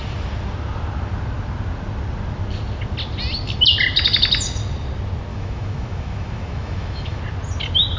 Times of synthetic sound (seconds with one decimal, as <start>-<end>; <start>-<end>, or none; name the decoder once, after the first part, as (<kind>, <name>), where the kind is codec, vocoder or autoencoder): 5.3-7.2 (autoencoder, DAC-VAE)